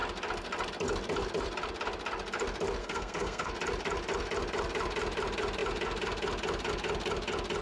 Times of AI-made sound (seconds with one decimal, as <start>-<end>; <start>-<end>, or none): 2.8-3.5

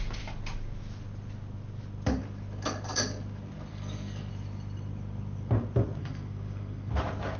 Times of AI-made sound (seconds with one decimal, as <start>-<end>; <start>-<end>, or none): 3.7-4.3; 6.0-6.9

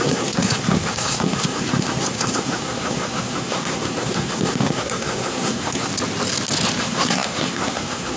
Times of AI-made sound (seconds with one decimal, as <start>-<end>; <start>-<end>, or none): 0.0-5.9; 6.8-8.2